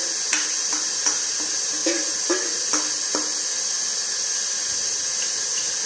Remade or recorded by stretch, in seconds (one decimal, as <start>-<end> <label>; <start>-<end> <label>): 0.0-1.3 recorded; 1.3-1.8 remade; 1.8-5.3 recorded; 5.3-5.9 remade

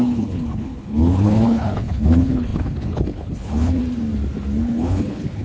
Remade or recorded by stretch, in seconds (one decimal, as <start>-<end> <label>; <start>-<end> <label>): 0.0-3.8 remade; 3.8-4.6 recorded; 4.6-5.4 remade

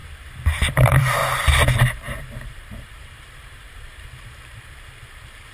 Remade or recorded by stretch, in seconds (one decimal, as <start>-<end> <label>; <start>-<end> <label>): 0.0-0.7 recorded; 0.7-1.2 remade; 1.2-1.8 recorded; 1.8-5.5 remade